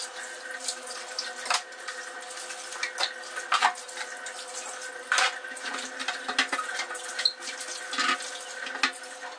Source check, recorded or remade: recorded